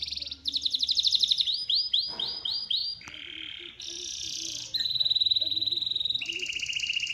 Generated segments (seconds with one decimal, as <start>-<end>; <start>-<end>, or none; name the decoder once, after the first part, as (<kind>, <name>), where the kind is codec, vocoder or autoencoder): none